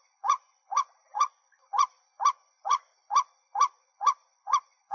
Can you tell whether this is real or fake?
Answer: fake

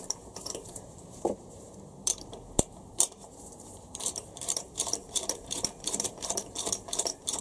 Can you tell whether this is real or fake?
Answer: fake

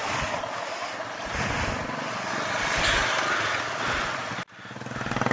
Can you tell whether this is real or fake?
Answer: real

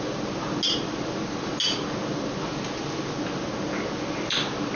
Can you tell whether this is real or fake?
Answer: real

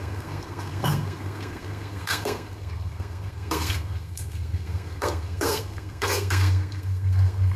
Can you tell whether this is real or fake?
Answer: fake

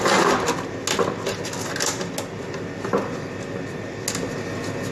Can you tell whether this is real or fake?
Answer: real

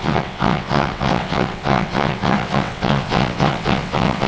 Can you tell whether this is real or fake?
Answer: fake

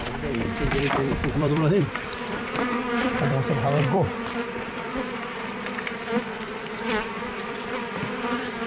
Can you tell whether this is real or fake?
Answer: fake